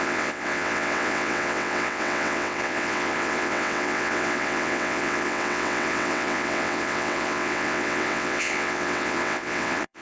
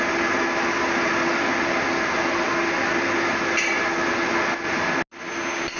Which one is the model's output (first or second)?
first